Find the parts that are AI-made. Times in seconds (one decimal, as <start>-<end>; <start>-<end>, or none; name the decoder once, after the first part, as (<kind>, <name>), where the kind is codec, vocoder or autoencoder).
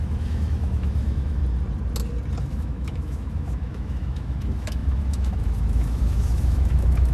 0.0-1.4 (autoencoder, DAC-VAE); 2.4-7.1